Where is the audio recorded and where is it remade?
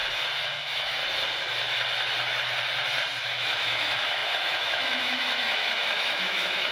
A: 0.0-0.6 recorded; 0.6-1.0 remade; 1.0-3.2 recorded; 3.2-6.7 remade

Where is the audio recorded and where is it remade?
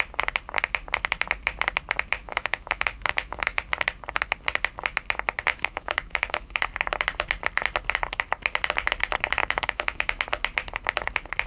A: 0.0-2.2 recorded; 2.2-3.6 remade; 3.6-5.5 recorded; 5.5-6.6 remade; 6.6-9.4 recorded; 9.4-10.2 remade; 10.2-11.5 recorded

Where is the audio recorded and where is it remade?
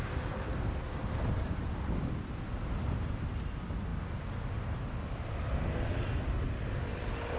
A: 0.0-7.4 recorded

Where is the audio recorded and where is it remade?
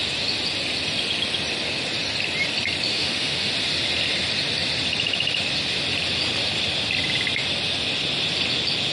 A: 0.0-2.9 recorded; 2.9-3.5 remade; 3.5-8.9 recorded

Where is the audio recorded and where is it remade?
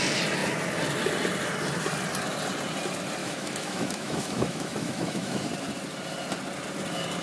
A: 0.0-3.2 recorded; 3.2-5.5 remade; 5.5-7.2 recorded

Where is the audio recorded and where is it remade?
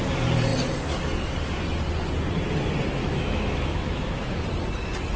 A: 0.0-3.0 recorded; 3.0-4.4 remade; 4.4-5.2 recorded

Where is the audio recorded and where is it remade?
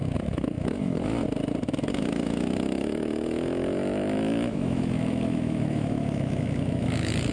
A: 0.0-1.2 remade; 1.2-1.9 recorded; 1.9-7.3 remade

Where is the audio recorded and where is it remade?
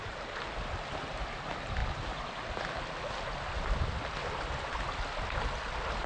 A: 0.0-6.1 recorded